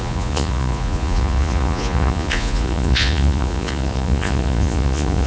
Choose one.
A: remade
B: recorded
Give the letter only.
A